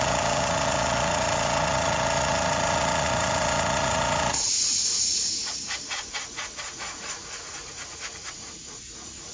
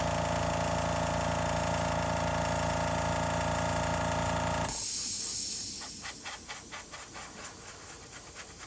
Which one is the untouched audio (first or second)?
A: second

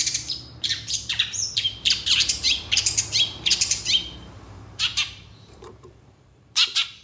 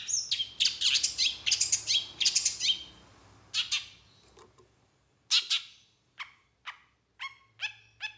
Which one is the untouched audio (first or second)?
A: second